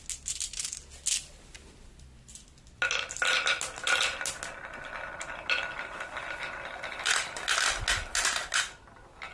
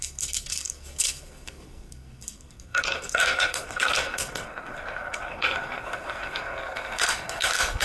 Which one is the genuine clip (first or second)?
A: first